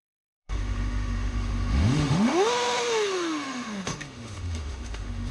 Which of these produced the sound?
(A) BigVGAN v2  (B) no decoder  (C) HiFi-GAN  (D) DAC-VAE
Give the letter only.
D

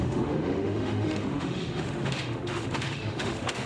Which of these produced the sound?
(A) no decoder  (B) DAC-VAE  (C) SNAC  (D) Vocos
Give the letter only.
B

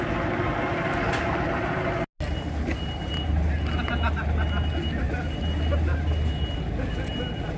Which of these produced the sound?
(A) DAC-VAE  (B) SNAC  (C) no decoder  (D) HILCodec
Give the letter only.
C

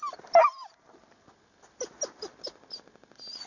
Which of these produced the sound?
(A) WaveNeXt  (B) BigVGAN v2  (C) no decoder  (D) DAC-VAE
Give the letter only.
C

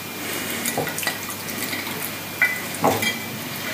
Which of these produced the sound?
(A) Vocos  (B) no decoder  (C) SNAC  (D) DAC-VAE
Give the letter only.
B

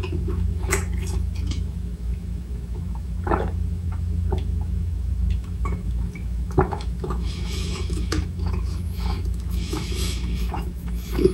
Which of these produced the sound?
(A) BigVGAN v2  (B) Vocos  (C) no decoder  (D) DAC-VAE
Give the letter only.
D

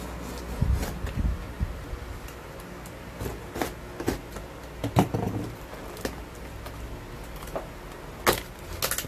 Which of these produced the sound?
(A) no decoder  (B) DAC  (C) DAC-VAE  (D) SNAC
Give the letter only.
A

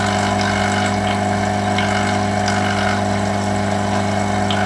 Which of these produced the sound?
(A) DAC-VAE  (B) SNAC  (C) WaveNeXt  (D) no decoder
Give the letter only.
D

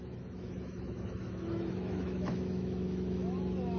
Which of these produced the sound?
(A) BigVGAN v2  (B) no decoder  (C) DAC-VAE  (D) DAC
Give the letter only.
C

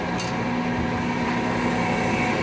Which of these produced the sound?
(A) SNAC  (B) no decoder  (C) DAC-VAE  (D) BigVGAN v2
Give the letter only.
B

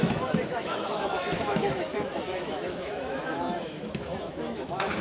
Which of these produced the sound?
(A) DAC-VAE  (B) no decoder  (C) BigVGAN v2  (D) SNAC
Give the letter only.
A